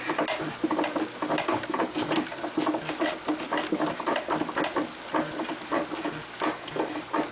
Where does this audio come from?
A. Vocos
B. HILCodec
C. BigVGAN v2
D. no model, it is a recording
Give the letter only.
D